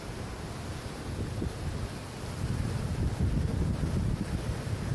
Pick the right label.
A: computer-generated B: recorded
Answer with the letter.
A